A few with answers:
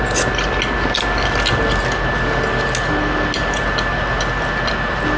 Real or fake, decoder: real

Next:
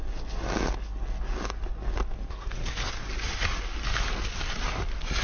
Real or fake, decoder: real